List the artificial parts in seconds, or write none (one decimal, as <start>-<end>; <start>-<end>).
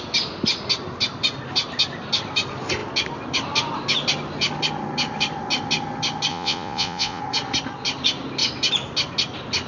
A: 6.3-7.2